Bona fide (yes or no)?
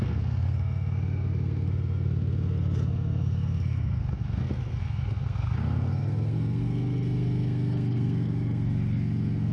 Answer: no